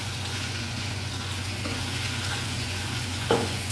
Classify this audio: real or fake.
fake